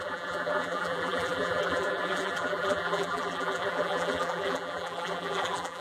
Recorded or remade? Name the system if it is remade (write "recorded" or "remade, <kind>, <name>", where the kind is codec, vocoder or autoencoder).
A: remade, vocoder, BigVGAN v2